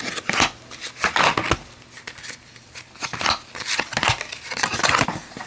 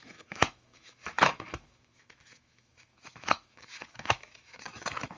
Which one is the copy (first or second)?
second